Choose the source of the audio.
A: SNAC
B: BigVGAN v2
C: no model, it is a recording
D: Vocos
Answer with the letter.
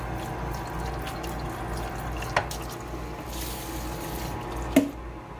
C